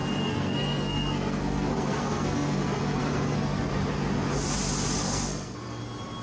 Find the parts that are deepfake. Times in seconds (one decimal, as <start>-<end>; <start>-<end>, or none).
0.0-3.7; 5.0-5.8